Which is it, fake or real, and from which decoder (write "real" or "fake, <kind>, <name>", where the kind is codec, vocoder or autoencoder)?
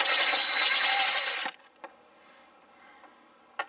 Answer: real